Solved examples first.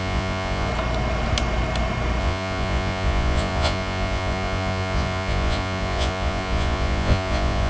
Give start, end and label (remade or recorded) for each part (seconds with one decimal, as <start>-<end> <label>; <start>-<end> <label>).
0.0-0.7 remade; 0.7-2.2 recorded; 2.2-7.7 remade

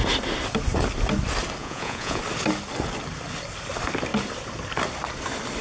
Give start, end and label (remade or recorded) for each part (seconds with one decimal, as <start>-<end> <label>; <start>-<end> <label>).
0.0-1.6 recorded; 1.6-2.2 remade; 2.2-5.6 recorded

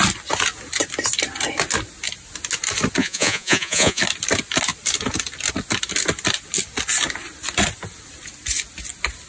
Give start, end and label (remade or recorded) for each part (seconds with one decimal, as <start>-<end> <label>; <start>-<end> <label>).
0.0-3.0 recorded; 3.0-4.0 remade; 4.0-9.3 recorded